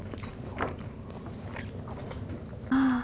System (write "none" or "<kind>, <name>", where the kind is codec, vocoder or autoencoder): none